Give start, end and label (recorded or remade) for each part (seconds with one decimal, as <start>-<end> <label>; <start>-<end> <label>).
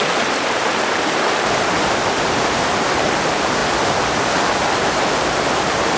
0.0-3.6 remade; 3.6-4.6 recorded; 4.6-6.0 remade